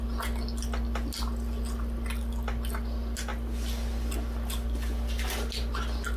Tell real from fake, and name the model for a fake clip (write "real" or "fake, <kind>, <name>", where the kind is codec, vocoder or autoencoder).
real